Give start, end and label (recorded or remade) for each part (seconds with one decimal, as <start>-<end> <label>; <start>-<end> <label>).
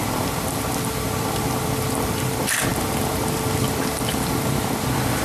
0.0-5.2 remade